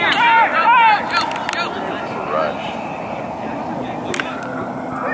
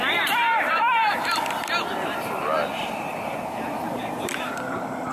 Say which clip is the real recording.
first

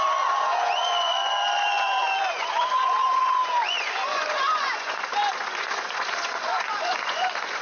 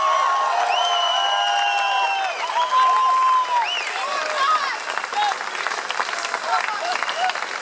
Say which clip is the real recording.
second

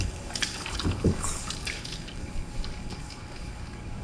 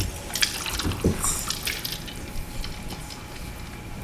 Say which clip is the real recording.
second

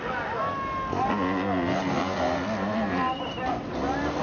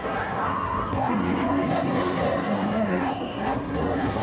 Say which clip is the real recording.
first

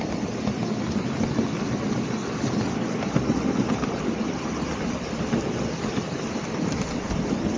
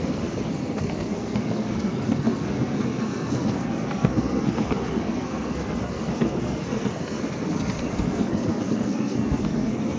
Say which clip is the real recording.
first